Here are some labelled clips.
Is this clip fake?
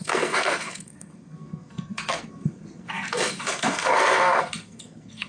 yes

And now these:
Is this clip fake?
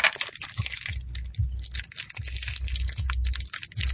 no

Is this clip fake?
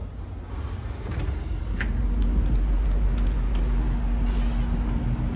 no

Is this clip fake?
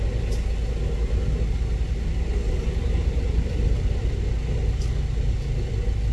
no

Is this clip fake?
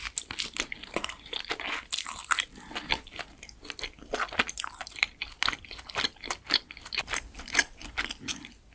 no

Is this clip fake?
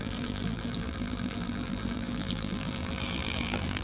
yes